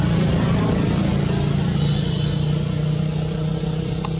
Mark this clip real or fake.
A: real